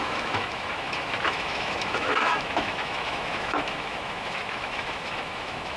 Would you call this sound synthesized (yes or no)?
yes